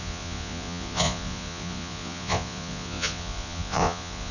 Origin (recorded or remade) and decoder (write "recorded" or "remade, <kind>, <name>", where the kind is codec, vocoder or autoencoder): remade, vocoder, Vocos